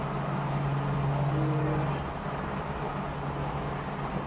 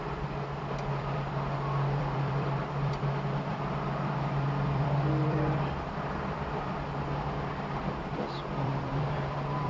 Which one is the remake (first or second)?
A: second